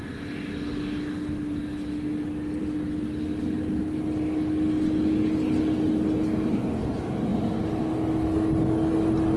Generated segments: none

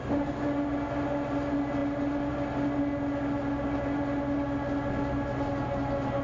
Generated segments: none